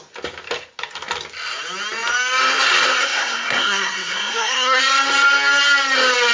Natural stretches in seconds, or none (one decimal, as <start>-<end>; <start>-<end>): 0.0-3.0; 4.8-6.3